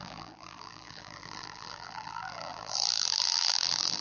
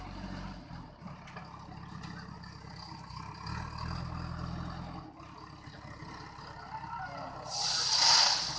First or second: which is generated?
first